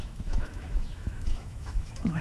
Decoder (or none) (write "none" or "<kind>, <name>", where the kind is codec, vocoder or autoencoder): autoencoder, DAC-VAE